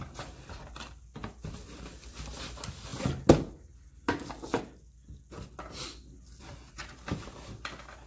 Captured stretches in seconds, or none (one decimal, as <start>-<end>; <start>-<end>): 0.0-8.1